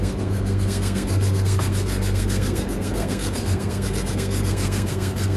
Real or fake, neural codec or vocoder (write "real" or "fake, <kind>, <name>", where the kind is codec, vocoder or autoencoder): fake, codec, SNAC